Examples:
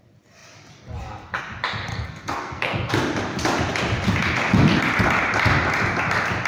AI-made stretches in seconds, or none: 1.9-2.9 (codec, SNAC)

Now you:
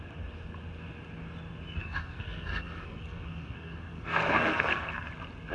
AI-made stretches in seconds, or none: 1.8-5.1 (codec, SNAC)